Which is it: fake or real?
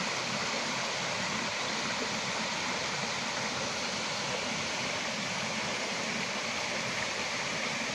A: fake